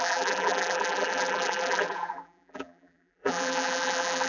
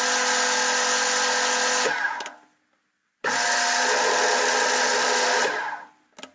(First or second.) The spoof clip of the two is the first